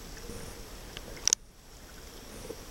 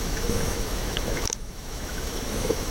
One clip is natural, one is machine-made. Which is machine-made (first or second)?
second